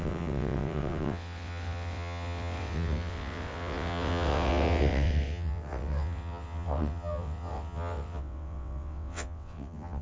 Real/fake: fake